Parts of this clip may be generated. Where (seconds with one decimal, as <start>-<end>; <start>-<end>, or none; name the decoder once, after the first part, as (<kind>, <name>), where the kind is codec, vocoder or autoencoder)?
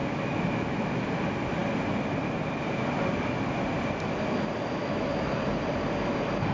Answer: 0.0-0.9 (autoencoder, DAC-VAE); 4.8-5.3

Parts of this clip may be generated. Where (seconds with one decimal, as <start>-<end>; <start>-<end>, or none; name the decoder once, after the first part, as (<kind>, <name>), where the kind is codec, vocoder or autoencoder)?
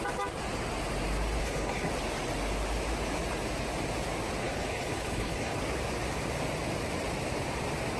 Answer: 1.4-1.9 (codec, HILCodec); 4.4-5.6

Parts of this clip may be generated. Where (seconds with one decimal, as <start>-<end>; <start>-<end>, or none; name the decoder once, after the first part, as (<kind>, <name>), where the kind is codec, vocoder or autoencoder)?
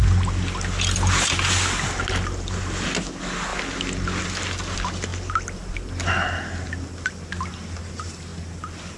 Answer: none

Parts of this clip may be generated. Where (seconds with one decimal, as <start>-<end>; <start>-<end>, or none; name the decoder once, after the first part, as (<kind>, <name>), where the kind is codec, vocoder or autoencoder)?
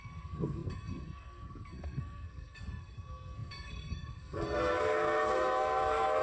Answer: 0.0-6.2 (codec, SNAC)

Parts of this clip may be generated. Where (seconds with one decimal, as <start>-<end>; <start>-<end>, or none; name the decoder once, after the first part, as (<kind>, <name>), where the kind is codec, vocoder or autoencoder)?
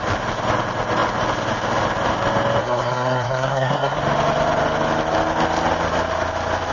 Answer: 2.6-4.0 (codec, SNAC)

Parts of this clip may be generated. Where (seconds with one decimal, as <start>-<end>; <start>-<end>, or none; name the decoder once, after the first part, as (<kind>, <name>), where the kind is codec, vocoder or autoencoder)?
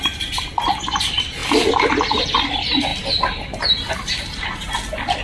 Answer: 0.0-2.9 (vocoder, BigVGAN v2); 3.9-5.2